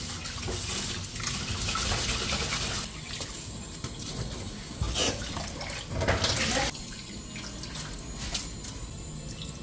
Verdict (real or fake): real